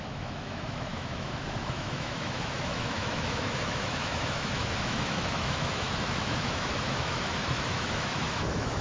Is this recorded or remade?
remade